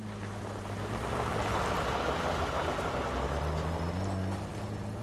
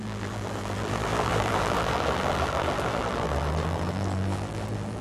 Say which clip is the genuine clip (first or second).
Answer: first